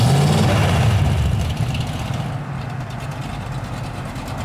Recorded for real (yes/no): yes